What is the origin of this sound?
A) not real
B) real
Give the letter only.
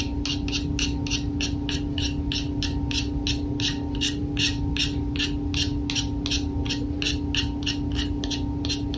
B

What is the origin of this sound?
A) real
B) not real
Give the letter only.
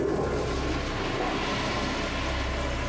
A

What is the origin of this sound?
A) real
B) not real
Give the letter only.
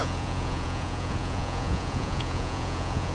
B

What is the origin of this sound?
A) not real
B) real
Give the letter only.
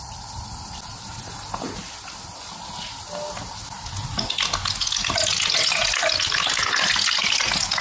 B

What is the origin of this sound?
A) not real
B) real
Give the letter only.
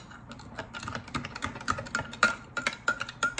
B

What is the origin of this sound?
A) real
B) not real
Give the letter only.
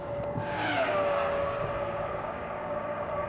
B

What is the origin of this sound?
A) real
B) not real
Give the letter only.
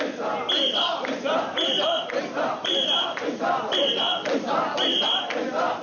A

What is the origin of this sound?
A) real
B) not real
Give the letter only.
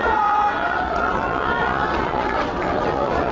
B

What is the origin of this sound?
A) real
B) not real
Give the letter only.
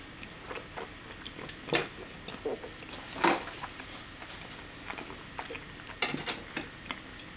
A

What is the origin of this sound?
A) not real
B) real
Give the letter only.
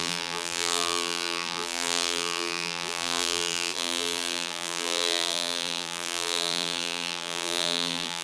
A